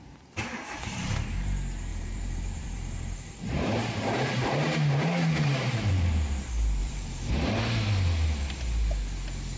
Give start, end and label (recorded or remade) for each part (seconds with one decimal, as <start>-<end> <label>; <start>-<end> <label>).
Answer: 0.0-1.9 recorded; 1.9-5.9 remade; 5.9-6.8 recorded; 6.8-7.3 remade; 7.3-9.6 recorded